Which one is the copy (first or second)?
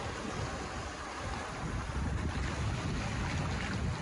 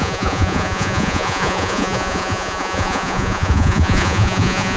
second